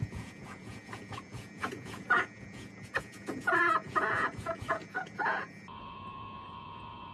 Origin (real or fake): fake